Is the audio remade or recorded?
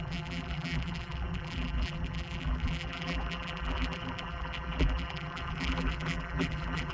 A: remade